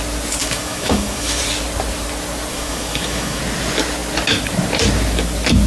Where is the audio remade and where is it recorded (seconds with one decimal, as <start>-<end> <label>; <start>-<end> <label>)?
0.0-0.4 recorded; 0.4-1.4 remade; 1.4-2.5 recorded; 2.5-3.4 remade; 3.4-5.7 recorded